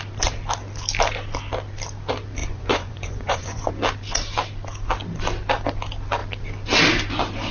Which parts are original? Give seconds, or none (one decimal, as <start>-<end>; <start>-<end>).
0.0-2.4; 3.7-7.5